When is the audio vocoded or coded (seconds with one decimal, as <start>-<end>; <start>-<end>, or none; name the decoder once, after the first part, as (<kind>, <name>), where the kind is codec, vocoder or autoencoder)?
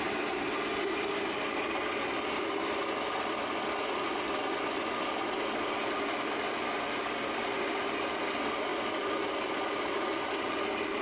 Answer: none